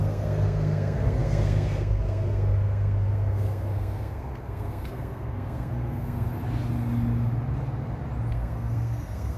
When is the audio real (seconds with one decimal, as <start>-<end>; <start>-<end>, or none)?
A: 6.3-8.3

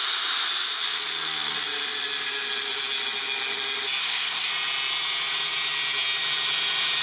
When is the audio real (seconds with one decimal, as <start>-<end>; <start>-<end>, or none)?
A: 0.0-4.0; 4.5-7.0

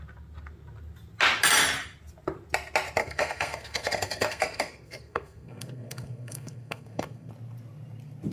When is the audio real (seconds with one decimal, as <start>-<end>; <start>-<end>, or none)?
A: 0.0-3.0; 7.3-8.3

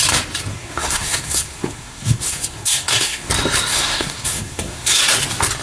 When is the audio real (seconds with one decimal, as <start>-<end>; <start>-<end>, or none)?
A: 0.0-0.5; 3.3-3.7; 5.0-5.6

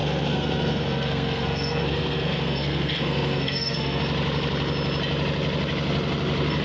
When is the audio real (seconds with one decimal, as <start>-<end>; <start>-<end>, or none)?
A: 4.0-6.6